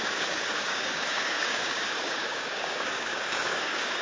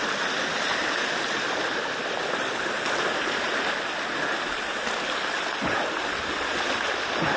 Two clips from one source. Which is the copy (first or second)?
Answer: first